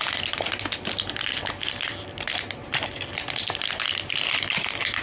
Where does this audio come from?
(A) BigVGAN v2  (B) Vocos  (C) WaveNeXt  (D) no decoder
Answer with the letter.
D